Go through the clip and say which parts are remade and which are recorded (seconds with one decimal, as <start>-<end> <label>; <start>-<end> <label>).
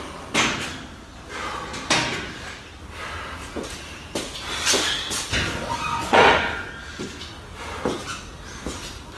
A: 0.0-5.9 recorded; 5.9-6.7 remade; 6.7-9.2 recorded